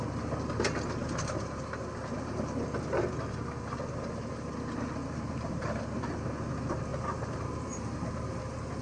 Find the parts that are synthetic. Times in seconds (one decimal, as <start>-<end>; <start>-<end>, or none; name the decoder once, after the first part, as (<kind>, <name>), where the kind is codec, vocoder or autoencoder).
5.0-6.2 (vocoder, BigVGAN v2); 6.9-8.4